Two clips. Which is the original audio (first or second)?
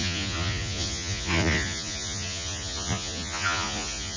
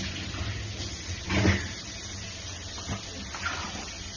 second